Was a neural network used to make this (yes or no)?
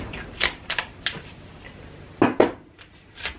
no